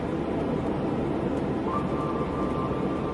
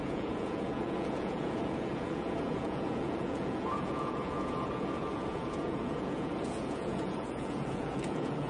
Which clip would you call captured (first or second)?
first